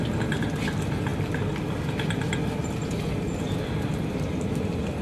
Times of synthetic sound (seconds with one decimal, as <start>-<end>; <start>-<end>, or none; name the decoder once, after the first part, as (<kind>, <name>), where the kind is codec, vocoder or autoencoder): none